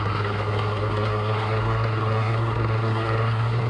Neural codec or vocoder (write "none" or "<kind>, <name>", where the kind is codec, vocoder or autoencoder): codec, SNAC